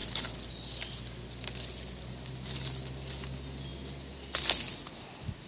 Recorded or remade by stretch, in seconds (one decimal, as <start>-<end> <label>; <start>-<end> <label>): 0.0-0.5 remade; 0.5-5.5 recorded